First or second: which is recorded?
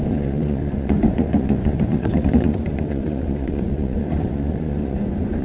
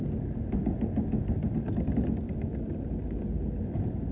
second